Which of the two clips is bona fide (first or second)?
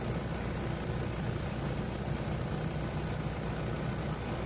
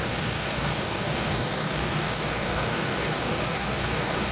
first